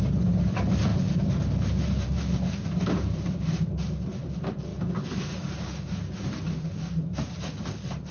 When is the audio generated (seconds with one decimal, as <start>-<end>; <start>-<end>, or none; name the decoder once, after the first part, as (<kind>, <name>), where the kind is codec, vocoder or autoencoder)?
none